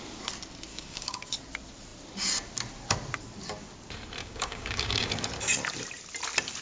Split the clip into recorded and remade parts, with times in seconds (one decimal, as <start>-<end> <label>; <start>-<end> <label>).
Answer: 0.0-0.7 recorded; 0.7-1.2 remade; 1.2-4.2 recorded; 4.2-5.1 remade; 5.1-6.6 recorded